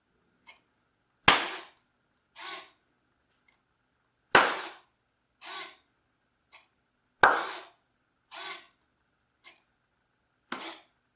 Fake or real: real